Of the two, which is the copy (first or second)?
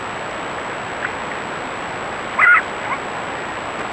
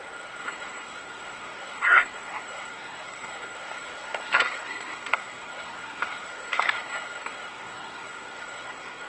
second